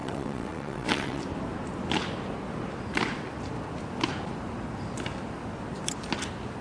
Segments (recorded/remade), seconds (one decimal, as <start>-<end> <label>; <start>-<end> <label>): 0.0-1.2 remade; 1.2-6.6 recorded